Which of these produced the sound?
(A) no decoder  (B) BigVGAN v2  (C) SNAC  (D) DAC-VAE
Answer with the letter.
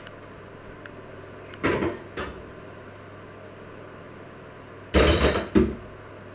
A